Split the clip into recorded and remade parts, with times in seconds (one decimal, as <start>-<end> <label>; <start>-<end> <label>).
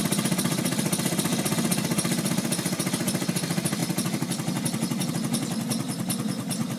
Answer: 0.0-6.8 recorded